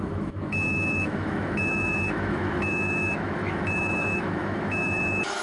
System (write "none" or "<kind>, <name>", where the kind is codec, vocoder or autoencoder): autoencoder, DAC-VAE